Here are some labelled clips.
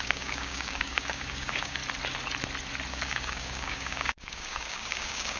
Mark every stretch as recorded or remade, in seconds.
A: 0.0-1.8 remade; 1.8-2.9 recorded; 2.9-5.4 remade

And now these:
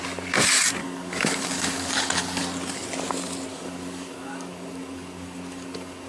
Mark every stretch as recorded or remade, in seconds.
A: 0.0-0.8 recorded; 0.8-2.4 remade; 2.4-3.5 recorded; 3.5-6.1 remade

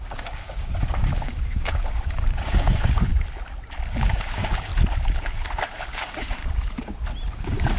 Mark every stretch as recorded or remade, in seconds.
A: 0.0-3.1 remade; 3.1-3.9 recorded; 3.9-4.7 remade; 4.7-5.2 recorded; 5.2-6.4 remade; 6.4-7.3 recorded; 7.3-7.8 remade

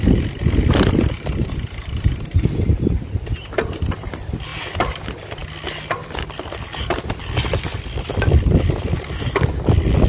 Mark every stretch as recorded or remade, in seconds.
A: 0.0-10.1 recorded